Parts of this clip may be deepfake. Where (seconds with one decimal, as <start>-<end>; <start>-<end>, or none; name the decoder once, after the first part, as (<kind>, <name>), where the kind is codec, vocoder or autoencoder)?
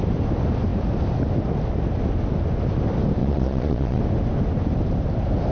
3.2-4.0 (vocoder, Vocos)